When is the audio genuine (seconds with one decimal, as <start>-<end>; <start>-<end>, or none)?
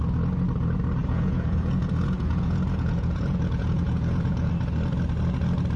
0.0-1.0; 4.5-5.8